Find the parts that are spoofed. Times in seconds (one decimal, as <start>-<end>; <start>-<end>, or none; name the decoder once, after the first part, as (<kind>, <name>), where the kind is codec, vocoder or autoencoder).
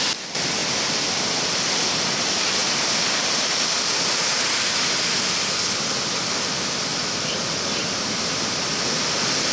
0.6-2.0 (vocoder, BigVGAN v2); 2.6-3.7; 6.9-8.4